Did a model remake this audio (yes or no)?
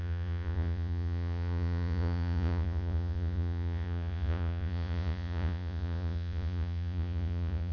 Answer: yes